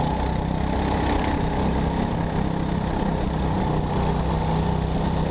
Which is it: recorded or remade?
recorded